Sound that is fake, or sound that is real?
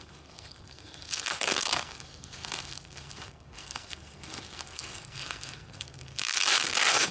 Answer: fake